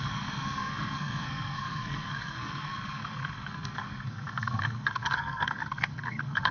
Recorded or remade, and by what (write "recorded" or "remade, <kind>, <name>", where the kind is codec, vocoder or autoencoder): remade, codec, SNAC